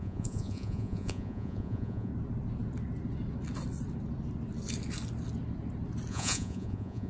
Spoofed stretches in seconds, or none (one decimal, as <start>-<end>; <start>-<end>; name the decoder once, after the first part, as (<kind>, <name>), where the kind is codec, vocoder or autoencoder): 0.0-2.1 (vocoder, Vocos); 6.1-7.1